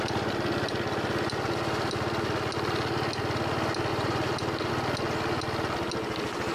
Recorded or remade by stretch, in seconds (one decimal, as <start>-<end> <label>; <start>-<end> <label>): 0.0-3.9 recorded; 3.9-4.7 remade; 4.7-6.5 recorded